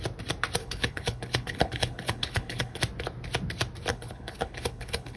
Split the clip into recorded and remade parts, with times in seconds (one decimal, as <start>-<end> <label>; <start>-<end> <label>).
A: 0.0-0.6 recorded; 0.6-2.8 remade; 2.8-3.9 recorded; 3.9-5.2 remade